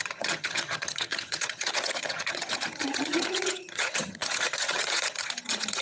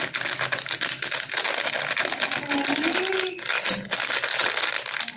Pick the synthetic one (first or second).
first